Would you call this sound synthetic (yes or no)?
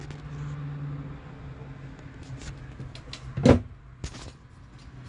no